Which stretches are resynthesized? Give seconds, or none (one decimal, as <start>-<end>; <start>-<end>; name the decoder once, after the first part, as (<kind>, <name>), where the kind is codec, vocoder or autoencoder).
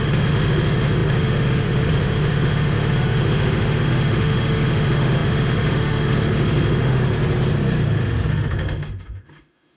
0.0-7.0 (autoencoder, DAC-VAE); 8.3-9.8